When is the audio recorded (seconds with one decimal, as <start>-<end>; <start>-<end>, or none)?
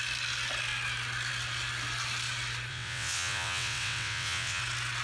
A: 0.0-2.7; 4.6-5.0